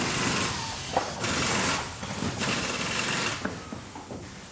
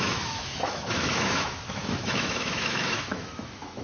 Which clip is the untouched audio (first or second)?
first